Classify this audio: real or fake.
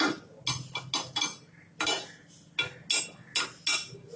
real